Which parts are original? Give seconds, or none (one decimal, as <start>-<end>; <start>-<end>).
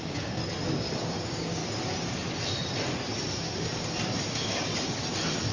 0.4-1.2; 1.6-4.3; 4.7-5.5